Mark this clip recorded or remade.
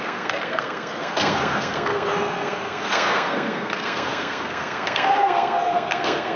remade